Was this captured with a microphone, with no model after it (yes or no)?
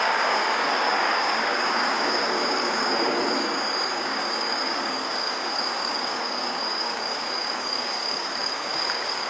no